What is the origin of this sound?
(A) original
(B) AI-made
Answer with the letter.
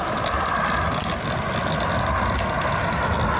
A